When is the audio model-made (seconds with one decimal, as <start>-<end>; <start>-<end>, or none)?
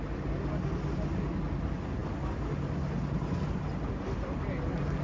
none